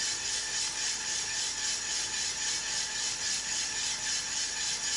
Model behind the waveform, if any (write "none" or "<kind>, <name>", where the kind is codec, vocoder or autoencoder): none